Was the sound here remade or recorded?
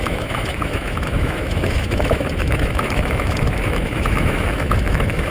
remade